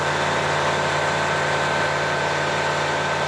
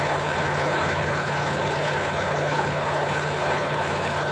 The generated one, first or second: second